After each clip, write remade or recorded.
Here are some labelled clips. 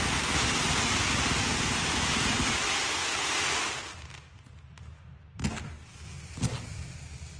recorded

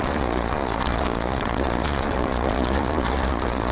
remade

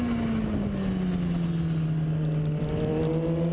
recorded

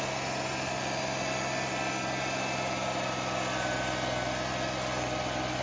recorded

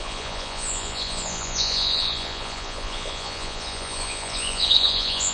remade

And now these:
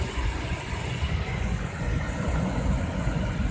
remade